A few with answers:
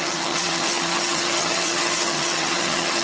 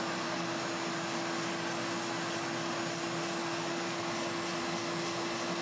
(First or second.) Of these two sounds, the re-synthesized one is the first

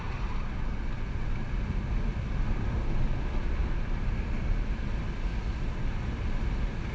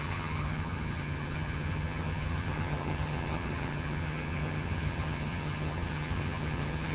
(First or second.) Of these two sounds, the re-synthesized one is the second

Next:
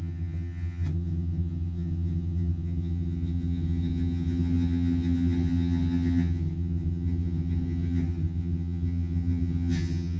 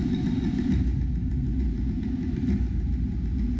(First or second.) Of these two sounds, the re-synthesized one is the first